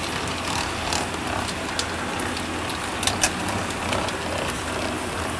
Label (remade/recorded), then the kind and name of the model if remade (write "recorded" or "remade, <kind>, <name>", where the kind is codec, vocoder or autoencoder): recorded